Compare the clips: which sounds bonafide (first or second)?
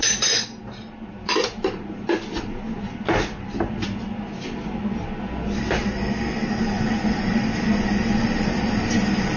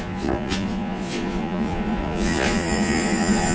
first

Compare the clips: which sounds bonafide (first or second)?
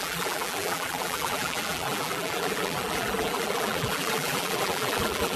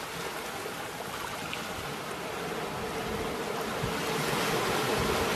second